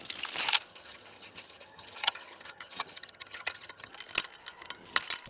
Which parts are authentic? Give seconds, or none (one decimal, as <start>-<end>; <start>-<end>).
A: 0.0-0.7; 3.9-5.3